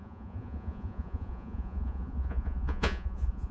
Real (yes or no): no